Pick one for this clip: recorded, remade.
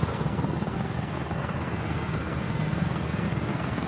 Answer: remade